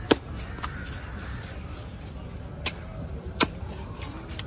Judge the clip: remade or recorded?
recorded